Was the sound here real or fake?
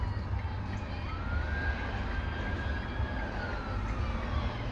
real